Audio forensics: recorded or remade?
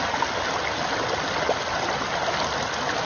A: recorded